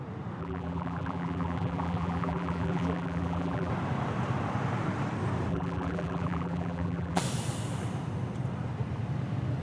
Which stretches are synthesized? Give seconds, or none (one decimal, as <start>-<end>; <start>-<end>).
0.4-3.7; 5.5-7.2